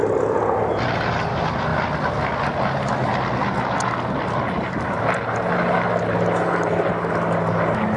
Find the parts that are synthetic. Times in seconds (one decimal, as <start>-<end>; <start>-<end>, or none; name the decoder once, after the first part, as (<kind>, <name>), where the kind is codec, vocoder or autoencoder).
none